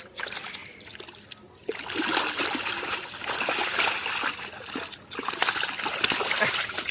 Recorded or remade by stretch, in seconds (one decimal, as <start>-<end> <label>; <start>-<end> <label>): 0.0-6.9 recorded